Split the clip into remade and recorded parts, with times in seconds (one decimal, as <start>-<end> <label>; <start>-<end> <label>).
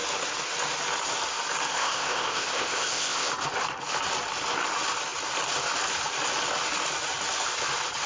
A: 0.0-1.7 recorded; 1.7-3.3 remade; 3.3-8.1 recorded